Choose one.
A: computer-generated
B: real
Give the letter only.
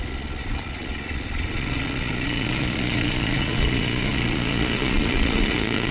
A